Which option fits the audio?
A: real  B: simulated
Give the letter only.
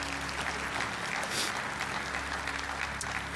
A